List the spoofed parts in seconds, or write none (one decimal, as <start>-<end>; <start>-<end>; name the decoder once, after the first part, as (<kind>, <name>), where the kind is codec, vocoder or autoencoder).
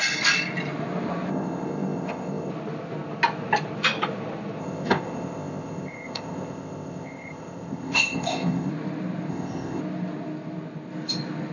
1.3-2.5 (codec, ZipCodec); 4.6-8.7; 9.3-9.8